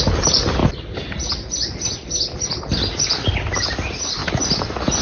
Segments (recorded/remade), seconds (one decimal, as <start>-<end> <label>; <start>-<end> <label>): 0.0-0.6 remade; 0.6-3.6 recorded; 3.6-4.2 remade; 4.2-5.0 recorded

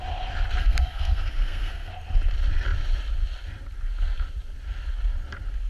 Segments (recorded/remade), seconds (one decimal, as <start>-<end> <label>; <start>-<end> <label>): 0.0-0.6 recorded; 0.6-1.9 remade; 1.9-5.7 recorded

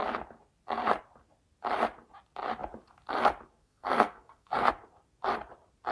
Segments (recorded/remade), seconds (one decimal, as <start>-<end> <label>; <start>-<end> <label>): 0.0-3.6 recorded; 3.6-4.7 remade; 4.7-5.9 recorded